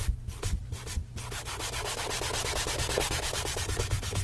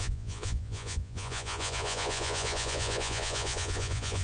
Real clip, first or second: first